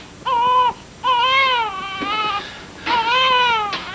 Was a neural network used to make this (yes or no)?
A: no